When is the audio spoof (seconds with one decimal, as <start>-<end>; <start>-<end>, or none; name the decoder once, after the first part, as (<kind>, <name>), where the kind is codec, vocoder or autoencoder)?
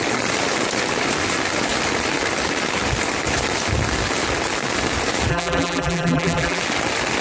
5.3-6.6 (vocoder, BigVGAN v2)